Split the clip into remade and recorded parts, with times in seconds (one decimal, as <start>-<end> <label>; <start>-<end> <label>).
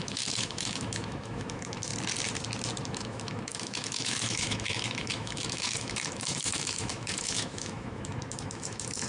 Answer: 0.0-1.9 remade; 1.9-2.8 recorded; 2.8-9.1 remade